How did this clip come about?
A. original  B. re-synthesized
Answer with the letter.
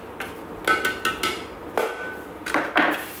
A